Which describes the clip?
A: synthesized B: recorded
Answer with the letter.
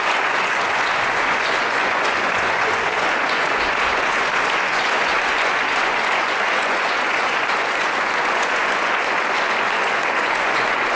A